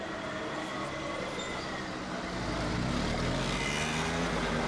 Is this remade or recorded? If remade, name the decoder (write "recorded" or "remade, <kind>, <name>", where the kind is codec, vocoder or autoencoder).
recorded